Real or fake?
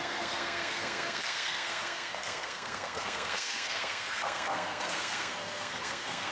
fake